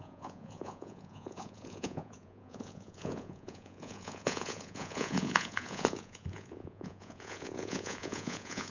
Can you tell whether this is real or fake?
fake